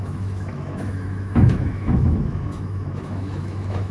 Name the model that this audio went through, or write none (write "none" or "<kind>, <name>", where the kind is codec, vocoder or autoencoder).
autoencoder, DAC-VAE